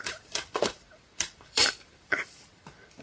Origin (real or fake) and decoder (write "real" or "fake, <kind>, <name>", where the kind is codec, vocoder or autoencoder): fake, vocoder, BigVGAN v2